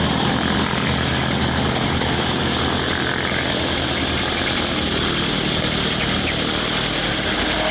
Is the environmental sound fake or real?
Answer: real